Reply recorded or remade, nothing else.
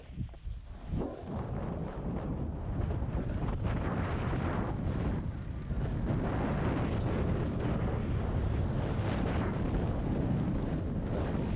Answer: recorded